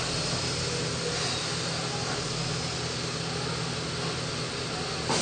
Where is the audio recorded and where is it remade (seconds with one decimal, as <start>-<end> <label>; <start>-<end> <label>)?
0.0-5.2 recorded